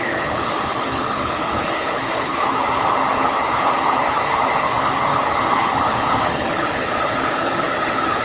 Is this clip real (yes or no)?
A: no